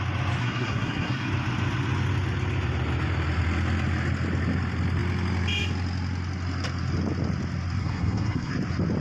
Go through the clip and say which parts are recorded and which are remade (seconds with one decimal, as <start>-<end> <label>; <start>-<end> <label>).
0.0-0.4 recorded; 0.4-1.3 remade; 1.3-7.8 recorded; 7.8-8.5 remade; 8.5-9.0 recorded